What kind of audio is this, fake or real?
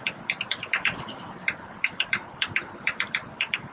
fake